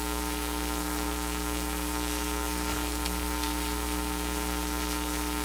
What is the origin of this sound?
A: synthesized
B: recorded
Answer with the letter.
A